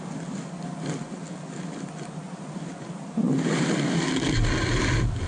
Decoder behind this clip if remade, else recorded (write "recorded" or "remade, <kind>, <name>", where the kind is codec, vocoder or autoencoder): recorded